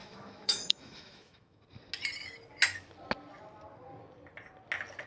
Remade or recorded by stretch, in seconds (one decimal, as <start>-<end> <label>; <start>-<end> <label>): 0.0-1.6 remade; 1.6-5.1 recorded